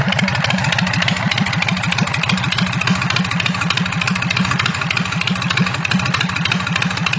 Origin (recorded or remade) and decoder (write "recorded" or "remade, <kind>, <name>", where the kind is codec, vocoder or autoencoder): recorded